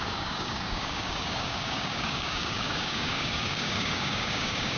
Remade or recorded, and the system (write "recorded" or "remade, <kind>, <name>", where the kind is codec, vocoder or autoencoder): remade, codec, DAC